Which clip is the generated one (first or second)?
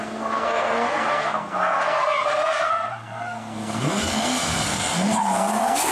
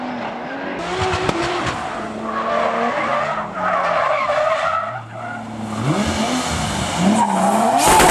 first